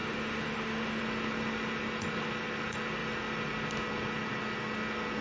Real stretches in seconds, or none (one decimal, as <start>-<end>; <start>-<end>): 1.0-5.2